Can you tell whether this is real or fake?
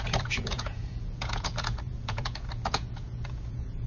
fake